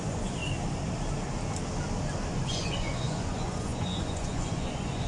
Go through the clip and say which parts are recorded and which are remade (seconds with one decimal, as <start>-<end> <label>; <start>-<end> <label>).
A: 0.0-0.4 remade; 0.4-2.3 recorded; 2.3-5.1 remade